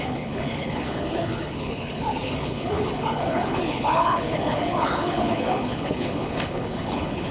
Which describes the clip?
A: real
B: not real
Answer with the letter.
B